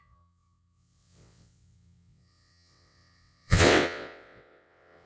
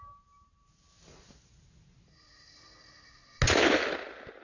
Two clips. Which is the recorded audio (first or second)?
second